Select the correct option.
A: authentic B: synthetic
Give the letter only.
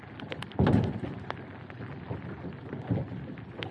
A